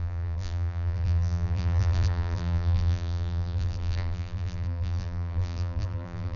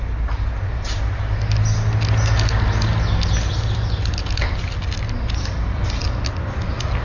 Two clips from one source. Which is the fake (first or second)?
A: first